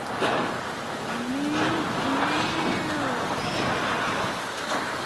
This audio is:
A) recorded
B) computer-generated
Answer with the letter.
A